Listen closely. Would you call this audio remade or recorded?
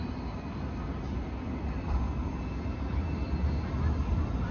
recorded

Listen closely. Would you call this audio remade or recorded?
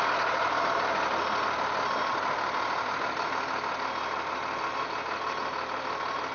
recorded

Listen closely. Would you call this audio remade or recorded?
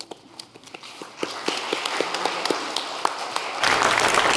recorded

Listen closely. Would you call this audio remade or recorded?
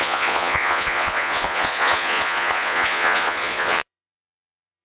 remade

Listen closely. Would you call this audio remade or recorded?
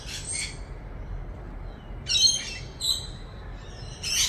recorded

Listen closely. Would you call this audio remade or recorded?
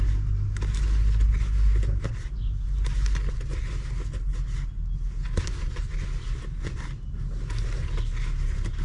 recorded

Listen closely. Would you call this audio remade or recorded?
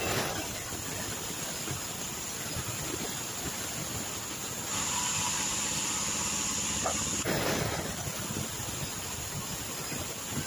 recorded